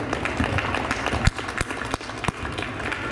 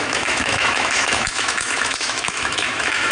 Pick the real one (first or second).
first